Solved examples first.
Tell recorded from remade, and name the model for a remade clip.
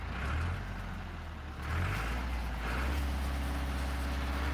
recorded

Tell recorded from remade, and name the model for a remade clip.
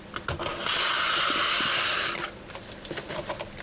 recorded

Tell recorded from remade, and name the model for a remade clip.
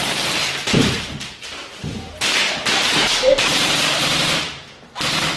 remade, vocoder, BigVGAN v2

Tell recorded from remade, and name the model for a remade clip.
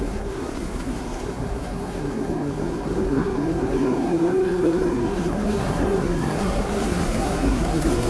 remade, codec, SNAC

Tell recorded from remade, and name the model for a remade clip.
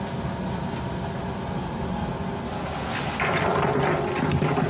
recorded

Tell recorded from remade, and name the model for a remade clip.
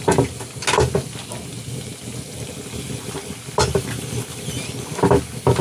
recorded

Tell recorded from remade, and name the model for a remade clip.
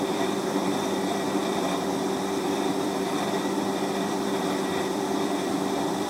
remade, vocoder, BigVGAN v2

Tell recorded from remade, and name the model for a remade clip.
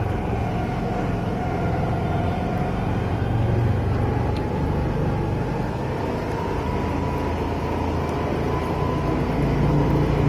recorded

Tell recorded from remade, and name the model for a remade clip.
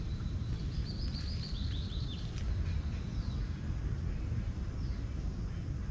recorded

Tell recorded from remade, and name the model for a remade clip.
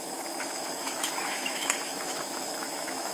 remade, autoencoder, DAC-VAE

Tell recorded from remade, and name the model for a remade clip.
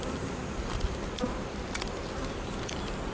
recorded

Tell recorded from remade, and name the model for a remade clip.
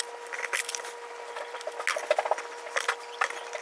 recorded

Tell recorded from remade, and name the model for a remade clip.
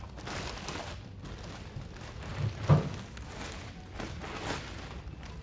recorded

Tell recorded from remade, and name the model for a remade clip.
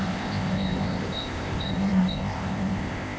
remade, codec, ZipCodec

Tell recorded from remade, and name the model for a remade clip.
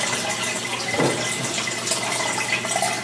recorded